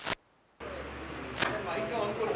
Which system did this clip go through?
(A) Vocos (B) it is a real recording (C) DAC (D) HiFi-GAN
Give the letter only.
B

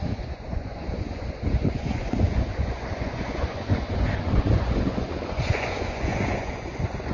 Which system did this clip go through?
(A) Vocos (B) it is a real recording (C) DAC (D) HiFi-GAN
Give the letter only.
A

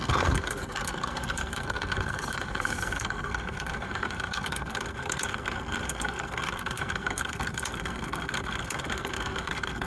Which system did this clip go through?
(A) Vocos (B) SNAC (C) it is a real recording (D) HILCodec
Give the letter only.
B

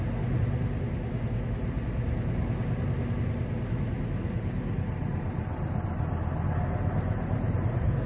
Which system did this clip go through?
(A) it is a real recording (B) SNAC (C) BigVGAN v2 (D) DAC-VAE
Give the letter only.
A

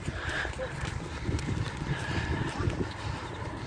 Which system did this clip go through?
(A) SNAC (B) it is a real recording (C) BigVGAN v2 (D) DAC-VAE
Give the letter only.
B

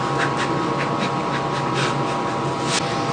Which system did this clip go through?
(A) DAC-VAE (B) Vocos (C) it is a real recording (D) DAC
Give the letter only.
C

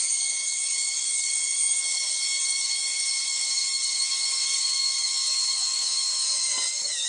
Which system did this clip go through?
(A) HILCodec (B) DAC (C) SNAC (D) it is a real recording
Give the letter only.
B